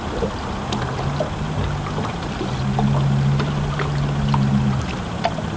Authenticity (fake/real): real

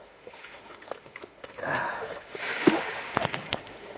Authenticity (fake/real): fake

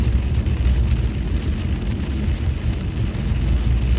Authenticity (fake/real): real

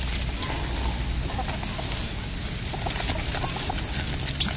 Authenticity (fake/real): real